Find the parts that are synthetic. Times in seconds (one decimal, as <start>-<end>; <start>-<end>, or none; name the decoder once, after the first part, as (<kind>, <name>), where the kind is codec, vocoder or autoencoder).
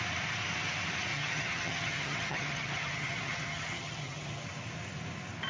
1.1-4.4 (vocoder, HiFi-GAN)